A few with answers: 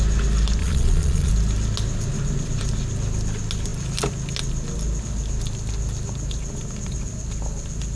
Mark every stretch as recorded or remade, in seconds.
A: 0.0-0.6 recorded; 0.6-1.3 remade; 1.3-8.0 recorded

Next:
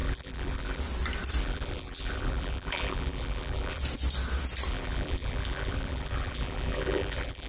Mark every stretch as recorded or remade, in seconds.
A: 0.0-0.8 remade; 0.8-1.4 recorded; 1.4-3.8 remade; 3.8-4.7 recorded; 4.7-7.5 remade

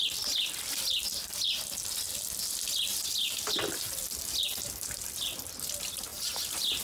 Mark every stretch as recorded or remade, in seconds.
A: 0.0-2.9 recorded; 2.9-3.6 remade; 3.6-6.1 recorded; 6.1-6.8 remade

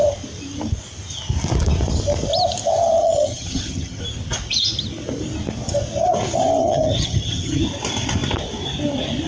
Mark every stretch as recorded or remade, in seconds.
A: 0.0-3.0 recorded; 3.0-4.0 remade; 4.0-6.6 recorded; 6.6-7.6 remade; 7.6-9.3 recorded

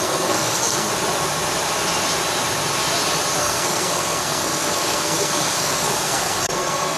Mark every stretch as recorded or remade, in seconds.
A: 0.0-0.9 remade; 0.9-3.4 recorded; 3.4-7.0 remade

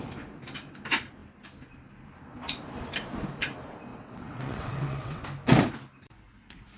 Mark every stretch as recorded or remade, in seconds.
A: 0.0-3.9 recorded; 3.9-5.2 remade; 5.2-6.8 recorded